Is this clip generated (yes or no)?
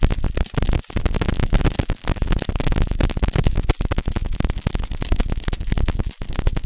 yes